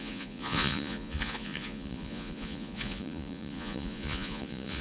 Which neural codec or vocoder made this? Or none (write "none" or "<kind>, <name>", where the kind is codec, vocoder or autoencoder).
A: vocoder, Vocos